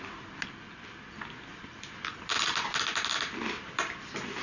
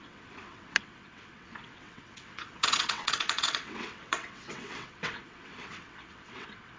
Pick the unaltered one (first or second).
first